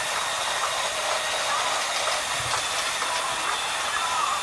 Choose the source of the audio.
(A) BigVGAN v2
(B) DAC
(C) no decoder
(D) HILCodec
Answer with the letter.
C